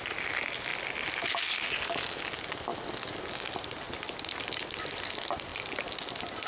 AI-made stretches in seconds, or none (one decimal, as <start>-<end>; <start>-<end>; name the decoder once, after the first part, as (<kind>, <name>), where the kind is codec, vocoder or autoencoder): none